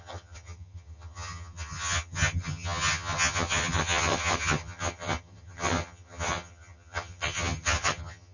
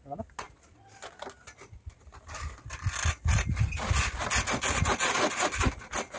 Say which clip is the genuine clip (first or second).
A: second